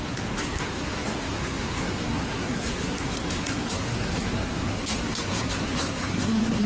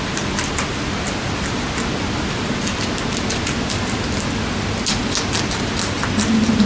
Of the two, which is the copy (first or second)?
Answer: first